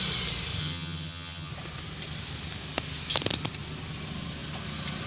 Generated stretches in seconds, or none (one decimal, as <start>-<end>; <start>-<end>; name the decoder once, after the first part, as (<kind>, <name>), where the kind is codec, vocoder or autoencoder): 0.6-1.5 (vocoder, HiFi-GAN)